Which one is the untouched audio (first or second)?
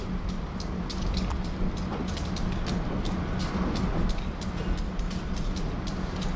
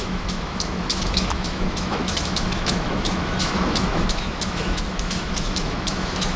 first